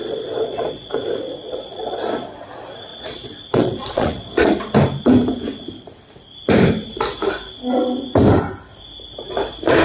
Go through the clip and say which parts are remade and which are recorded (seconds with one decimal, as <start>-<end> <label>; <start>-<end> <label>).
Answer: 0.0-0.9 remade; 0.9-1.3 recorded; 1.3-2.1 remade; 2.1-2.9 recorded; 2.9-4.6 remade; 4.6-9.8 recorded